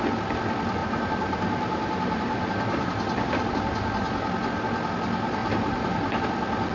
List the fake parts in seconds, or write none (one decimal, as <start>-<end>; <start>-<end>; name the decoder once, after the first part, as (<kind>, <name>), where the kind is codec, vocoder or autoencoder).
0.8-3.5 (vocoder, BigVGAN v2); 5.4-6.2